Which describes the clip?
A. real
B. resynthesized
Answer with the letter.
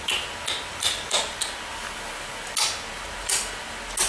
A